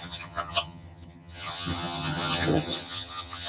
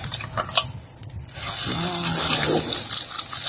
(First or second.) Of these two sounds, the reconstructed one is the first